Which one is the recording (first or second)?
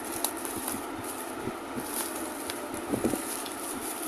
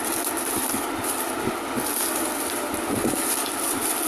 second